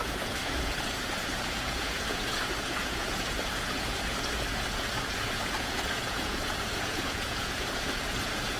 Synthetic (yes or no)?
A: yes